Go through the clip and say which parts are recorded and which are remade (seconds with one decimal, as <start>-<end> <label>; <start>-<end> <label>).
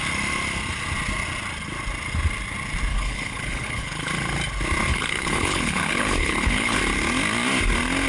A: 0.0-2.9 recorded; 2.9-4.1 remade; 4.1-4.9 recorded; 4.9-6.8 remade; 6.8-8.1 recorded